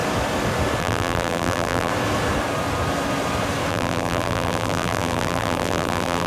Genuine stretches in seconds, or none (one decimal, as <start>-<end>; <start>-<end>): 0.0-0.8; 1.9-3.7